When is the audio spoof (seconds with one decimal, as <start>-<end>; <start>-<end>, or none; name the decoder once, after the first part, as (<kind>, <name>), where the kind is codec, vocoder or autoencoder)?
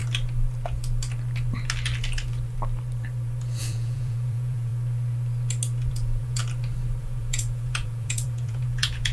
3.6-4.7 (vocoder, Vocos); 5.9-6.4; 7.0-9.1